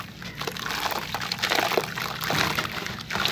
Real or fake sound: real